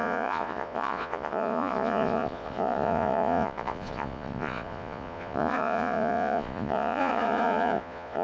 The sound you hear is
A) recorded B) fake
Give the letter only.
B